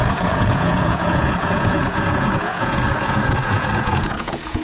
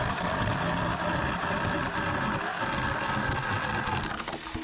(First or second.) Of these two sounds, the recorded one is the second